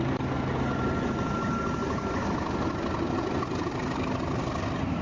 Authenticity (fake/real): real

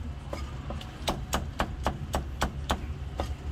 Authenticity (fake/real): real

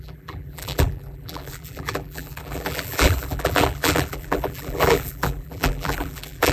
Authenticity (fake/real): fake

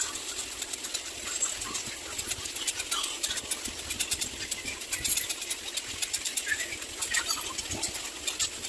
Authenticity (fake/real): real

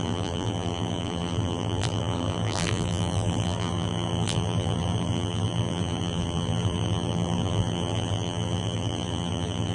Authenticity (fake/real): fake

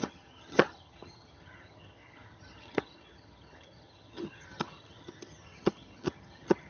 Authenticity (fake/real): fake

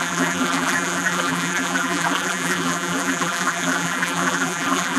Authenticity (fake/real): fake